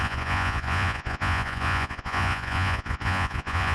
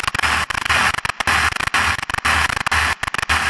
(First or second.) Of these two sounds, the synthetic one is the first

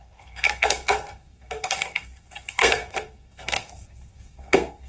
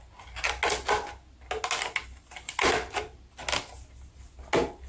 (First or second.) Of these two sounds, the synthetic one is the first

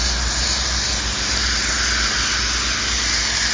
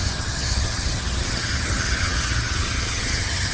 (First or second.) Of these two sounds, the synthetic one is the second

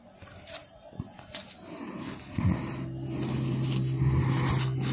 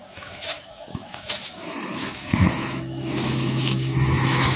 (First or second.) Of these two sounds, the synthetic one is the second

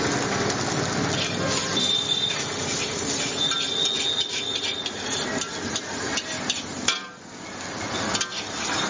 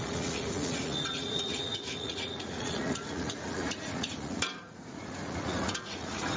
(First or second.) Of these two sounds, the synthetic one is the second